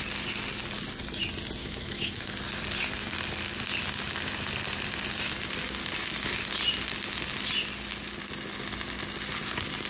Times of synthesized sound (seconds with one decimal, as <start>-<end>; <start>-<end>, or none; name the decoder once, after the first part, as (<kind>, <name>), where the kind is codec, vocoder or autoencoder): 1.6-2.3 (autoencoder, DAC-VAE)